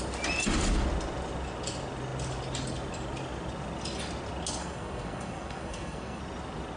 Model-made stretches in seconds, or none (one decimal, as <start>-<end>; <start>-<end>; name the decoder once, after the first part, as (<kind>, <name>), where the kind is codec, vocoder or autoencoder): 4.6-6.2 (codec, SNAC)